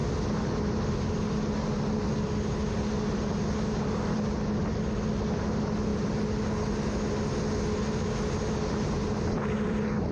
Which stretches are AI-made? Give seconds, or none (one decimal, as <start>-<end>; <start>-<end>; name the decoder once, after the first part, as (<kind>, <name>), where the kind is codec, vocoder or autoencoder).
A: none